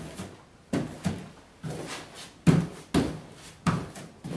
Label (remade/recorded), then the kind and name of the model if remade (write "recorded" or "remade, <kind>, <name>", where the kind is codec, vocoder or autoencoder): recorded